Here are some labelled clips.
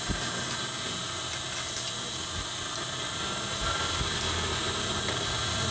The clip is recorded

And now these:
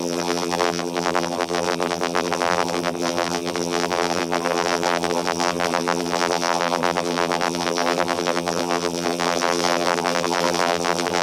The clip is remade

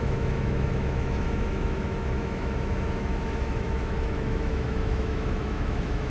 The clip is remade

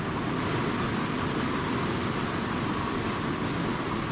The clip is recorded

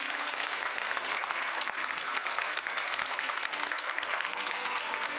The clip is remade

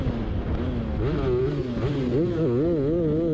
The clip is recorded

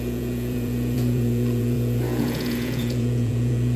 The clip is remade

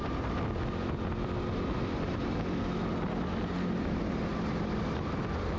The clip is recorded